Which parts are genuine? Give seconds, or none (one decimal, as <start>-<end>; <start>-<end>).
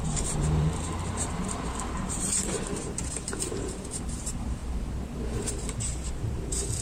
4.6-5.4